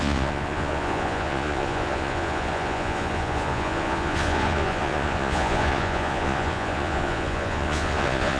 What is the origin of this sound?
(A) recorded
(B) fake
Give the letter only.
B